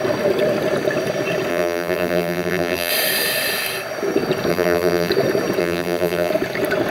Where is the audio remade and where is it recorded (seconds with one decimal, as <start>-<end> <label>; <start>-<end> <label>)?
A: 0.0-1.5 recorded; 1.5-2.9 remade; 2.9-4.5 recorded; 4.5-5.1 remade; 5.1-5.6 recorded; 5.6-6.3 remade; 6.3-6.9 recorded